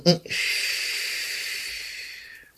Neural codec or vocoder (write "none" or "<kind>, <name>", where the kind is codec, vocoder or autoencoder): vocoder, BigVGAN v2